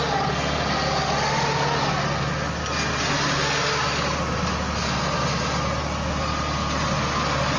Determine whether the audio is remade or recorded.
recorded